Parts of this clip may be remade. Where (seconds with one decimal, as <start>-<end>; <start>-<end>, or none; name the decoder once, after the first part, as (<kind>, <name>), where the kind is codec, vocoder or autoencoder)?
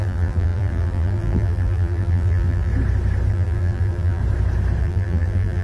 0.0-2.7 (vocoder, BigVGAN v2); 3.3-4.2; 4.8-5.6